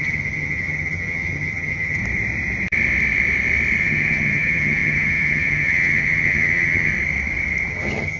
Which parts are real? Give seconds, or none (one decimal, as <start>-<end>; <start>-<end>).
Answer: 2.0-3.8; 6.9-7.7